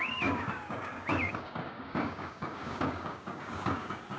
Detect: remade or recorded remade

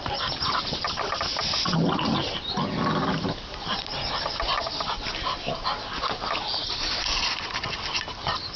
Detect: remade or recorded recorded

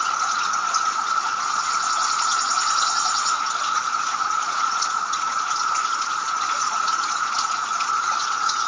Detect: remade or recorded remade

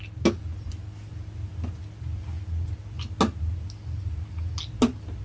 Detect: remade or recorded recorded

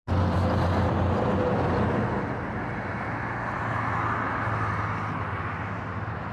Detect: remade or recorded recorded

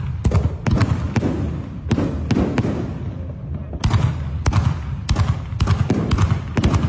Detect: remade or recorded recorded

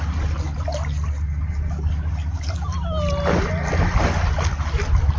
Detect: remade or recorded recorded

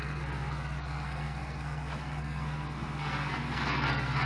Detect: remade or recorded remade